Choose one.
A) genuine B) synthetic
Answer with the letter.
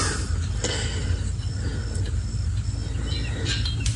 A